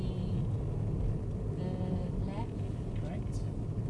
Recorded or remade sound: recorded